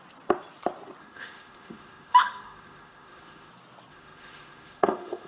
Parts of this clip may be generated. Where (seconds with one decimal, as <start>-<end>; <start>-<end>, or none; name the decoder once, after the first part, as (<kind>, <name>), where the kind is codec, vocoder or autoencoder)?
1.0-3.5 (autoencoder, DAC-VAE); 3.9-5.3